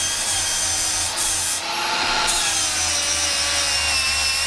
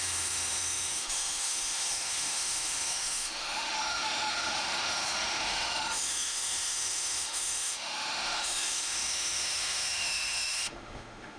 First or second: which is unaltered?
first